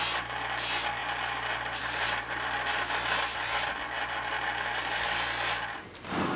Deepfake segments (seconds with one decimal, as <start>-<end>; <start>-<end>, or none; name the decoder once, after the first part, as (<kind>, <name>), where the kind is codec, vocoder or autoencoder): none